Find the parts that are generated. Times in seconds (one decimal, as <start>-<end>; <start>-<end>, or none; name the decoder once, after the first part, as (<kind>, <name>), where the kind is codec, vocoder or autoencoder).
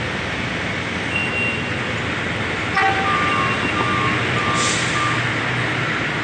none